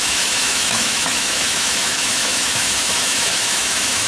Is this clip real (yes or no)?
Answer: no